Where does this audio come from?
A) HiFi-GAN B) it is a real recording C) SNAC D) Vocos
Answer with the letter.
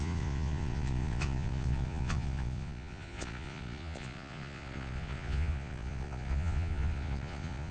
D